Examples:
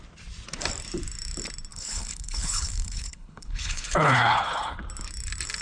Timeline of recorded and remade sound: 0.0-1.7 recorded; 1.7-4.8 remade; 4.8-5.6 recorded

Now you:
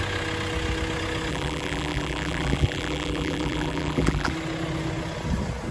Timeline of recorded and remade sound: 0.0-1.3 recorded; 1.3-4.3 remade; 4.3-5.7 recorded

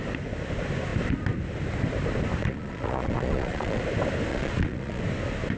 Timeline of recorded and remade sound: 0.0-2.4 recorded; 2.4-3.8 remade; 3.8-4.3 recorded; 4.3-5.0 remade; 5.0-5.6 recorded